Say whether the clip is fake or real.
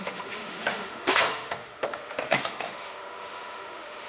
fake